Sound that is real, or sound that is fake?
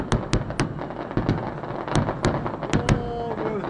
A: real